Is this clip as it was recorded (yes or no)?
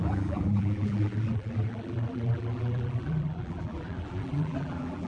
no